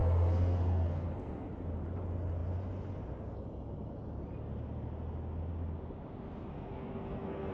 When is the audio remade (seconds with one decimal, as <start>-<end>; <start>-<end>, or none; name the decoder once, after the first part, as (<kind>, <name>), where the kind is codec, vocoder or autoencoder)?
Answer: 0.0-1.5 (codec, SNAC); 6.5-7.5

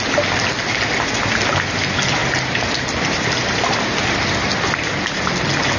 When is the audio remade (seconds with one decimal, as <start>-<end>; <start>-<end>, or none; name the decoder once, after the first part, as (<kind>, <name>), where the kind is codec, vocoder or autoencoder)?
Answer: 2.2-3.6 (vocoder, BigVGAN v2)